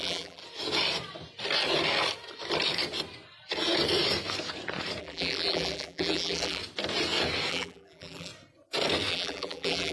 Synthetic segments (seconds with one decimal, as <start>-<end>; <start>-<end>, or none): 0.0-0.4; 5.0-6.6; 7.5-8.3; 9.1-9.9